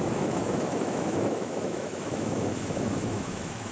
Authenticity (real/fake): fake